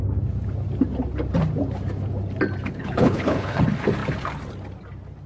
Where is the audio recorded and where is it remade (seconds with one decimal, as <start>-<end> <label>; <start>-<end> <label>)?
0.0-2.7 recorded; 2.7-3.6 remade; 3.6-5.3 recorded